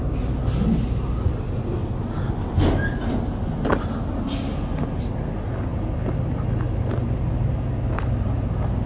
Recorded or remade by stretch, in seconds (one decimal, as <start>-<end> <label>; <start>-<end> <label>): 0.0-8.9 recorded